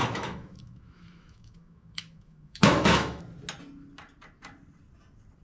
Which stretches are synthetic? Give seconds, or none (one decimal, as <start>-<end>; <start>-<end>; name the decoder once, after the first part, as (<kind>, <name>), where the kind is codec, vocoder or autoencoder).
0.0-3.2 (autoencoder, DAC-VAE)